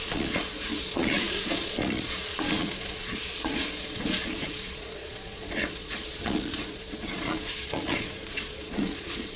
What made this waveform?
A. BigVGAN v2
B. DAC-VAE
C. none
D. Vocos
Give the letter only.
D